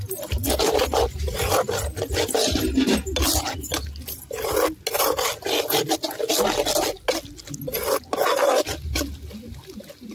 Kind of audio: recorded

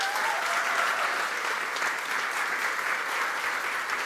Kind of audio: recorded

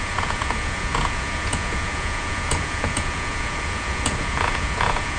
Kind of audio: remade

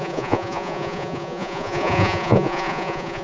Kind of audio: remade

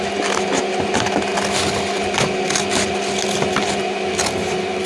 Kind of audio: recorded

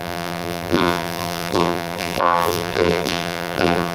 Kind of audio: remade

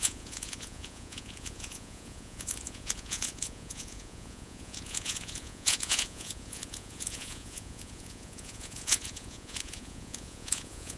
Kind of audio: remade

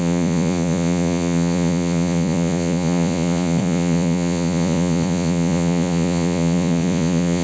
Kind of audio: remade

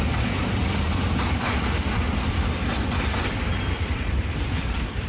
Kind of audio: remade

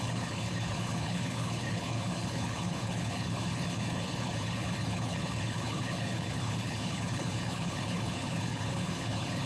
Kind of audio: remade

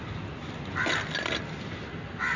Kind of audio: recorded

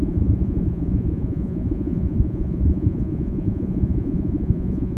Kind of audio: remade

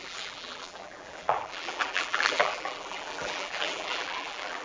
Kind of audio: remade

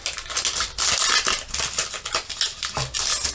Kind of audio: recorded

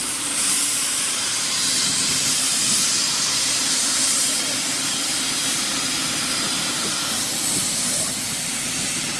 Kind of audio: remade